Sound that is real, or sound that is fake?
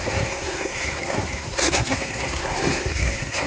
fake